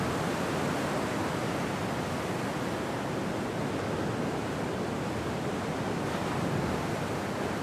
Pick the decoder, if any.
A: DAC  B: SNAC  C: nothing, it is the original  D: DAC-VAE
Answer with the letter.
C